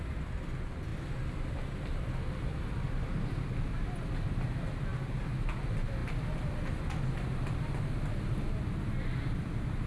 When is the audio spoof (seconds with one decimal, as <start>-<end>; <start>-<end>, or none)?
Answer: none